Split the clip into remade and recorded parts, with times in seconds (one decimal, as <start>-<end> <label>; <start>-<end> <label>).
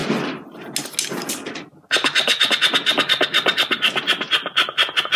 0.0-5.2 recorded